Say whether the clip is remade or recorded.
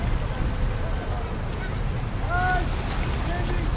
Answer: recorded